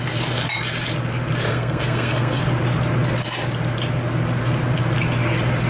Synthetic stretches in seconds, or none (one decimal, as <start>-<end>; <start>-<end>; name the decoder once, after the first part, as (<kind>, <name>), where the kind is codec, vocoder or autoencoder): 1.5-2.4 (codec, SNAC)